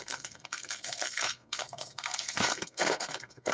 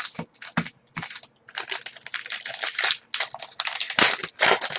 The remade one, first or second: first